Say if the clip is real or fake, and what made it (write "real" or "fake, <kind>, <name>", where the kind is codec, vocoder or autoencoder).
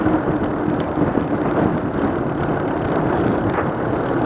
fake, vocoder, BigVGAN v2